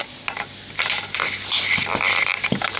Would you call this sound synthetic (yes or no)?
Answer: no